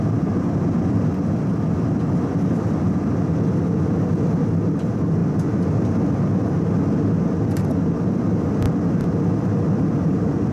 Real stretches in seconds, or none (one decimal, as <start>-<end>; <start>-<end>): 0.0-10.5